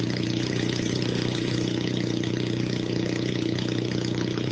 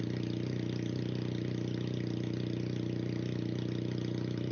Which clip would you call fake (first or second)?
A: first